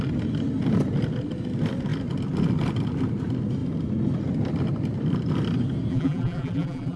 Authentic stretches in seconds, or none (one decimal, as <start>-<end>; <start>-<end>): 0.0-5.9